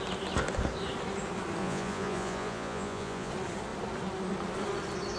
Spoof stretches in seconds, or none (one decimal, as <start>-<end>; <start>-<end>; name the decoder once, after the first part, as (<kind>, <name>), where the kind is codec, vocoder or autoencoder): 1.6-3.3 (vocoder, Vocos)